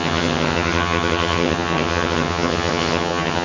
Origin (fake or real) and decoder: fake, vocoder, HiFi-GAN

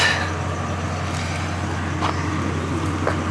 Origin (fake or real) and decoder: real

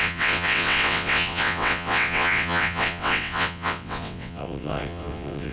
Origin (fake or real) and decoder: fake, vocoder, WaveNeXt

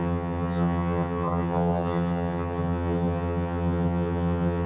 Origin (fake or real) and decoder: fake, vocoder, HiFi-GAN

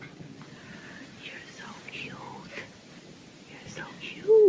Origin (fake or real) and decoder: real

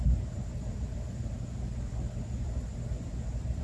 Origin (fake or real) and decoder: real